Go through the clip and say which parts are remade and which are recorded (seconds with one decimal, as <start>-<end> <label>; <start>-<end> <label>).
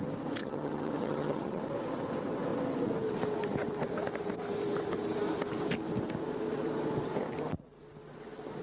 0.0-0.4 recorded; 0.4-1.6 remade; 1.6-8.6 recorded